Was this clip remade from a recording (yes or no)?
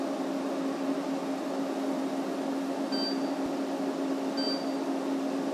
no